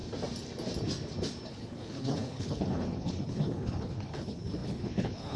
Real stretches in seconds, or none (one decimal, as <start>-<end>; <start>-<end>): 0.0-1.5